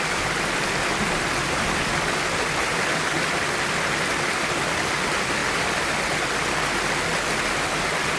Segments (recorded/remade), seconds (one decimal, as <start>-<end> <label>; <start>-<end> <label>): 0.0-8.2 recorded